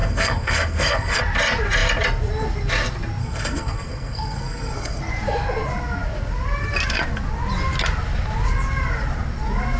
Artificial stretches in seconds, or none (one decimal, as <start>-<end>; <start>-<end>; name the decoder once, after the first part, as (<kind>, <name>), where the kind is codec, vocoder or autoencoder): 0.0-1.2 (codec, SNAC); 3.2-5.0